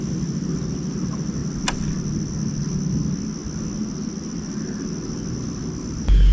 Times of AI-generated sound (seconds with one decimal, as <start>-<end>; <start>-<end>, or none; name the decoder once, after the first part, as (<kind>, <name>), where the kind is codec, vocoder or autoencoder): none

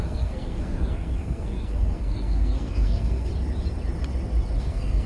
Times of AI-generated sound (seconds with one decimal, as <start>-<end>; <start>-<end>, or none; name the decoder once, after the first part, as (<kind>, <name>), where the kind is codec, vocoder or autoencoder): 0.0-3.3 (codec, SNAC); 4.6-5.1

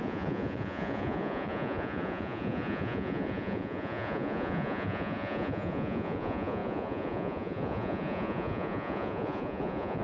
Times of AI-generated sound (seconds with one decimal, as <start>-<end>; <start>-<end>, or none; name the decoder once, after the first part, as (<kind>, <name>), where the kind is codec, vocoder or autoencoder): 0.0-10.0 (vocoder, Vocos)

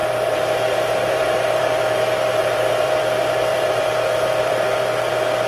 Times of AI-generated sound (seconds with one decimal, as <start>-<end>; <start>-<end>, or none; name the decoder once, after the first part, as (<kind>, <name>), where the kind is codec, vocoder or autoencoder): 0.0-3.0 (vocoder, BigVGAN v2); 3.5-4.7

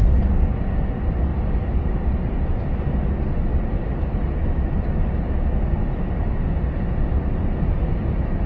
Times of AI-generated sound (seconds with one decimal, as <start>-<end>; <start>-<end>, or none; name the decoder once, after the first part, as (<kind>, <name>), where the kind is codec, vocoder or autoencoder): 1.3-2.3 (vocoder, BigVGAN v2); 3.5-4.1